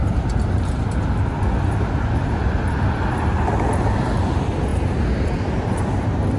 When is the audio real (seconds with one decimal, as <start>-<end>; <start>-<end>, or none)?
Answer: 0.0-6.4